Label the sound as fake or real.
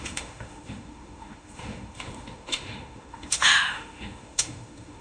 fake